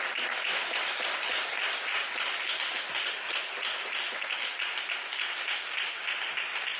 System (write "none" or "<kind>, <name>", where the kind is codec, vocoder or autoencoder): none